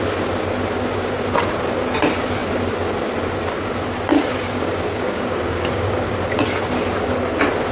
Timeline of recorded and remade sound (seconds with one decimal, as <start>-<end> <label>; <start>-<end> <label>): 0.0-4.1 recorded; 4.1-6.1 remade; 6.1-7.7 recorded